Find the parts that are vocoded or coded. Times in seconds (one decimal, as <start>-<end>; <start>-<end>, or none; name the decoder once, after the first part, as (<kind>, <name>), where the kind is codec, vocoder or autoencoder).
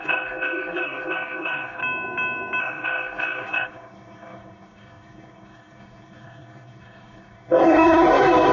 0.0-1.8 (codec, SNAC); 2.6-8.5